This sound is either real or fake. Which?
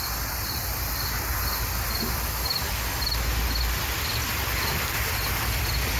real